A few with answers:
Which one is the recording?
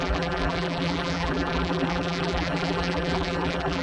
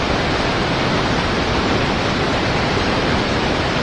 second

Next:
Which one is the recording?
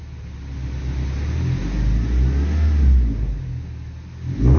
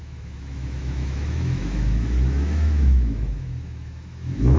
first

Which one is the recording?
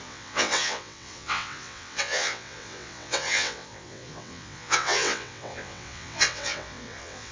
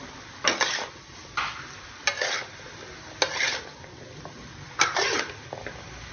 second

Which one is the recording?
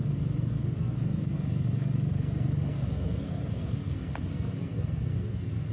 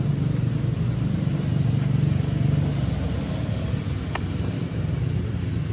second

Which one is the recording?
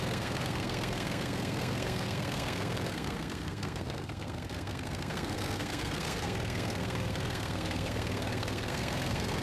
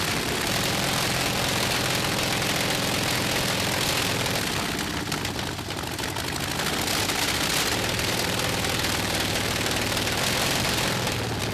second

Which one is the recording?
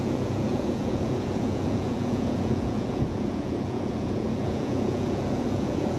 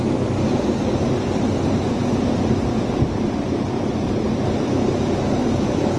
second